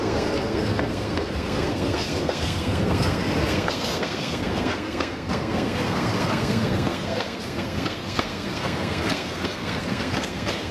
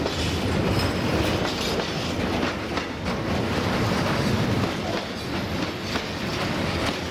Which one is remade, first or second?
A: first